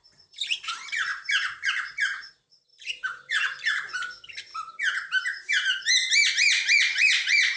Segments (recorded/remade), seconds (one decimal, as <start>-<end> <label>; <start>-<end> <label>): 0.0-1.1 recorded; 1.1-2.3 remade; 2.3-2.7 recorded; 2.7-3.7 remade; 3.7-4.5 recorded; 4.5-6.3 remade; 6.3-7.6 recorded